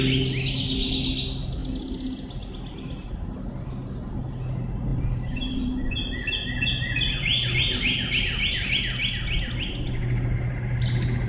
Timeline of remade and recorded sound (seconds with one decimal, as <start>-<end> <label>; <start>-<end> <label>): 0.0-4.9 recorded; 4.9-7.6 remade; 7.6-11.3 recorded